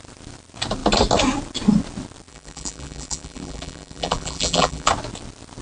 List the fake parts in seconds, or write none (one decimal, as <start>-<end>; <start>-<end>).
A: 2.3-4.9